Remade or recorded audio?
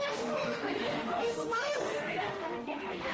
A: remade